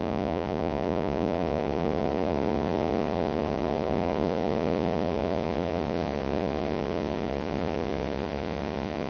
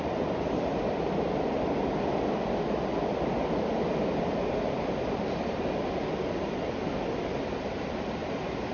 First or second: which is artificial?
first